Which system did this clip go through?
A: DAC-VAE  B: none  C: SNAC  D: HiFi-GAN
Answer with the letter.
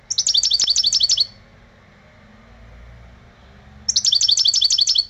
B